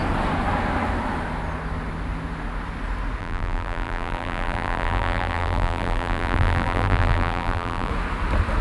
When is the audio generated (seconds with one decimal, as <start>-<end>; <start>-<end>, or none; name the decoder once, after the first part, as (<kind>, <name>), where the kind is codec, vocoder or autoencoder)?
3.2-7.9 (vocoder, BigVGAN v2)